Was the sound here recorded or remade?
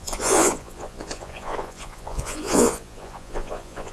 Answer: remade